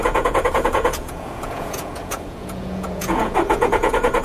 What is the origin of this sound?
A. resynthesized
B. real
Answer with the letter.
A